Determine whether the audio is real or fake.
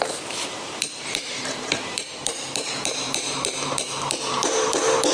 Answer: fake